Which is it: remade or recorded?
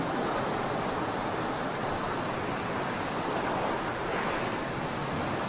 recorded